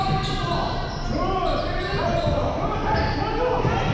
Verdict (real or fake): real